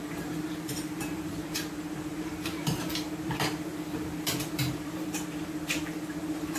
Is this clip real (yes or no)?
no